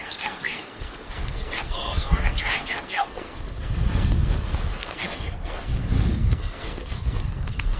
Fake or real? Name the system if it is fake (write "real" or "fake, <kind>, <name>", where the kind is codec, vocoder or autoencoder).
fake, codec, SNAC